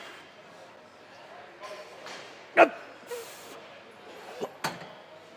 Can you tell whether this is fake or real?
real